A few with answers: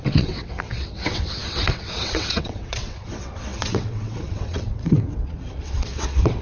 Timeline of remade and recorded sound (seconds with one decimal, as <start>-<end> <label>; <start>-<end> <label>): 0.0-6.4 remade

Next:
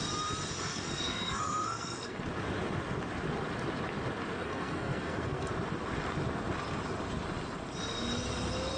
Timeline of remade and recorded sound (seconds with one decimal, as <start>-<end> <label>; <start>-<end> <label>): 0.0-0.7 recorded; 0.7-2.2 remade; 2.2-4.4 recorded; 4.4-5.5 remade; 5.5-8.8 recorded

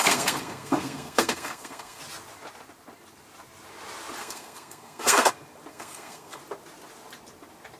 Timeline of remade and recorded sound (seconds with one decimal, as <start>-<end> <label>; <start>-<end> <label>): 0.0-2.0 remade; 2.0-4.2 recorded; 4.2-5.3 remade; 5.3-5.7 recorded; 5.7-6.4 remade; 6.4-7.8 recorded

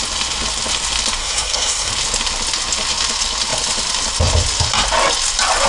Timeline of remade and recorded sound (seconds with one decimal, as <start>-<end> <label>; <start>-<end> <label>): 0.0-1.2 recorded; 1.2-1.9 remade; 1.9-5.7 recorded

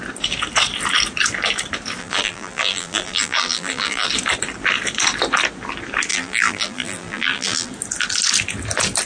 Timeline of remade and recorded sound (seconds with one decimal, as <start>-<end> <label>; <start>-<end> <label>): 0.0-2.0 recorded; 2.0-4.1 remade; 4.1-6.1 recorded; 6.1-7.7 remade; 7.7-9.1 recorded

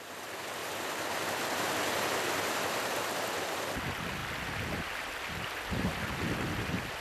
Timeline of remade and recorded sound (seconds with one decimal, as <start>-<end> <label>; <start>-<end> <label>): 0.0-7.0 recorded

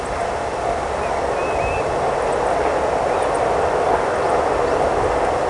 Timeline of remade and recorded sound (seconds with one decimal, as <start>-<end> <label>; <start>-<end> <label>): 0.0-5.5 recorded

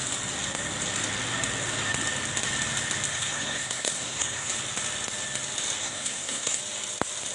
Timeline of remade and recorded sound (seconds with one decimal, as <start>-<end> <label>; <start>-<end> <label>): 0.0-3.1 recorded; 3.1-4.5 remade; 4.5-5.8 recorded; 5.8-6.6 remade; 6.6-7.3 recorded